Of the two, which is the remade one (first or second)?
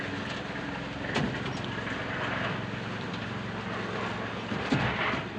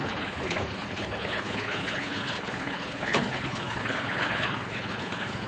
second